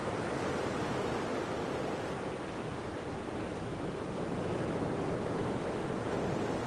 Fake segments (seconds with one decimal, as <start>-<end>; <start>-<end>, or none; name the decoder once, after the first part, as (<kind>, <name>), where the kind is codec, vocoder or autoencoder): none